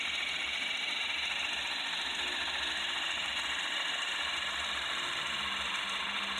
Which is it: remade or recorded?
recorded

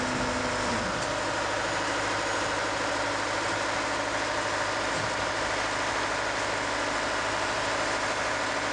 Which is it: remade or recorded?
recorded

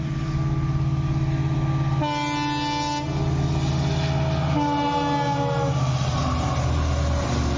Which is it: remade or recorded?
recorded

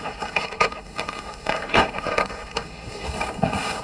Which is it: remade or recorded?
remade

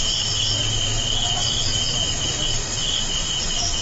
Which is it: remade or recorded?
recorded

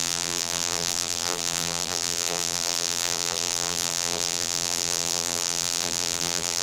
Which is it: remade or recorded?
remade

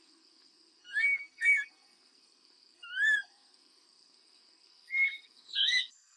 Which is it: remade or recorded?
remade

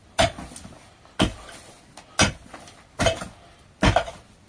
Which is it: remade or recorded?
recorded